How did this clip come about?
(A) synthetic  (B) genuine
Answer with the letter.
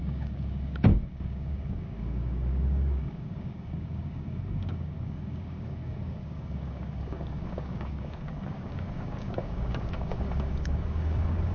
A